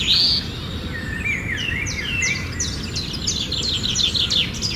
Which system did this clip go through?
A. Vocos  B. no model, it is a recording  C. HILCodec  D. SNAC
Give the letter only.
B